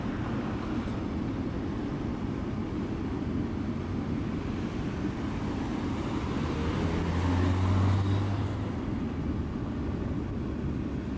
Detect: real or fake real